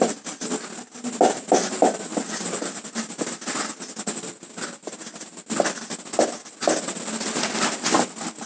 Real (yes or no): yes